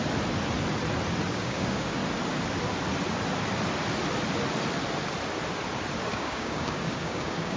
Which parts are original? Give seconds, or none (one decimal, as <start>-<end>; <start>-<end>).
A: 0.0-1.3; 2.0-6.0